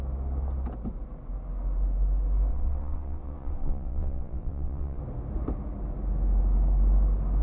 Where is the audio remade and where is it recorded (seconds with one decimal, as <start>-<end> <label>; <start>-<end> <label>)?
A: 0.0-2.5 recorded; 2.5-5.0 remade; 5.0-7.4 recorded